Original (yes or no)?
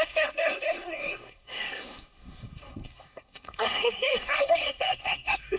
no